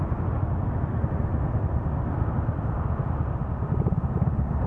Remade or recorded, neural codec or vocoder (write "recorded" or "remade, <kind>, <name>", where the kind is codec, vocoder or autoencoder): recorded